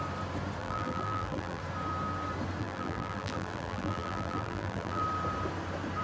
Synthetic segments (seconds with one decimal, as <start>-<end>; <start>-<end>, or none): 0.6-1.6; 2.6-5.0